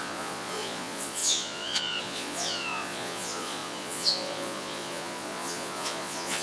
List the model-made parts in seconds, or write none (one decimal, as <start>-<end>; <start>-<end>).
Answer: 0.0-6.4